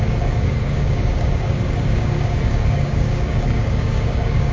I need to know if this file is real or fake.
fake